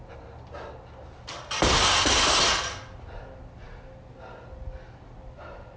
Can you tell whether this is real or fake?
real